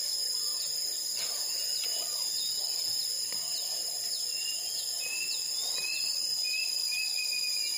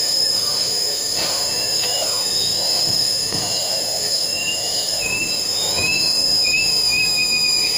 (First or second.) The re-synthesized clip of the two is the second